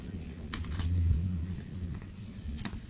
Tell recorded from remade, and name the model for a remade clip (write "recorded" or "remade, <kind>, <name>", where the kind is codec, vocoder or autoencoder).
remade, vocoder, Vocos